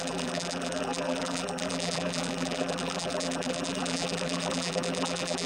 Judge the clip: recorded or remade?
remade